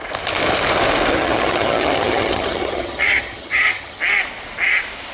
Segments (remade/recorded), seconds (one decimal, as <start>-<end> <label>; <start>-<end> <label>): 0.0-1.1 recorded; 1.1-4.0 remade; 4.0-5.1 recorded